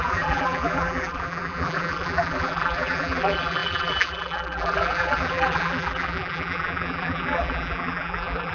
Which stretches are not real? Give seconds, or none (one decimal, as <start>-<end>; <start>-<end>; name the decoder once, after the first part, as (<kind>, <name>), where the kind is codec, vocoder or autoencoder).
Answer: 0.0-8.5 (vocoder, BigVGAN v2)